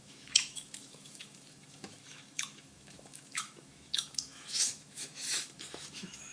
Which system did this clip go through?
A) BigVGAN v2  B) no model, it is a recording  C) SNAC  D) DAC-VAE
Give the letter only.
D